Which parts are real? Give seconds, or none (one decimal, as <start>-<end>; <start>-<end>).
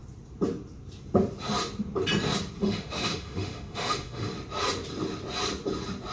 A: 0.0-2.6; 4.3-6.1